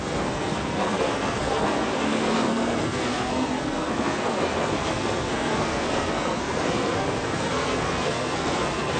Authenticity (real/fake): fake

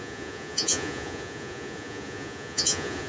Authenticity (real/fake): fake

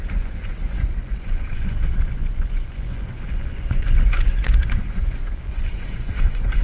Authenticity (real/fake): fake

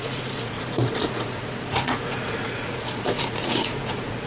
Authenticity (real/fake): fake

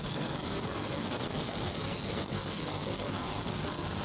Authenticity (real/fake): fake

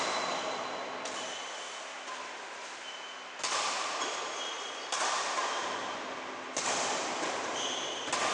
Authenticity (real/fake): real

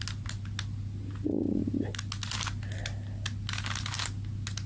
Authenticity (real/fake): real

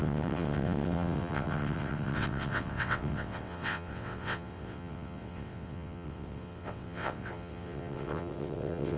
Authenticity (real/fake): fake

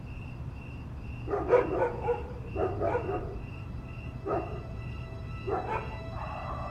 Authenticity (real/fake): fake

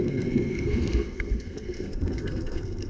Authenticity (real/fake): fake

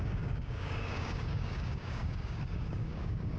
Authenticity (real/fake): fake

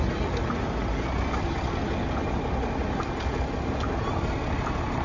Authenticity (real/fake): real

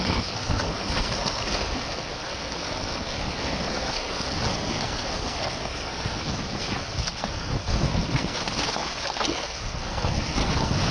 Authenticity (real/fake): fake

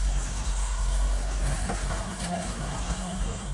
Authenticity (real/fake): fake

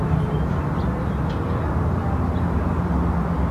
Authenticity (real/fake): real